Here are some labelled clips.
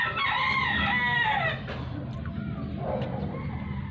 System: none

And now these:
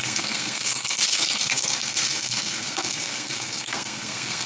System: codec, SNAC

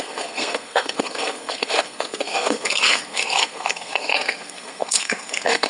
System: codec, SNAC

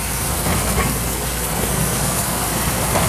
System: codec, SNAC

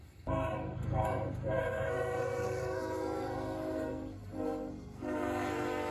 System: codec, SNAC